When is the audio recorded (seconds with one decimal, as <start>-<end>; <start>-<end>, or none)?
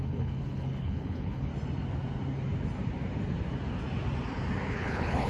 1.5-4.7